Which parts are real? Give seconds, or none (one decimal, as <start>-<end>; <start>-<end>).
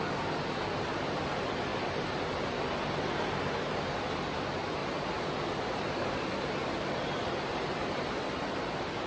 0.0-1.7; 2.5-4.8; 8.4-9.1